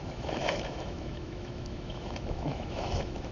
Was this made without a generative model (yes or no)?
no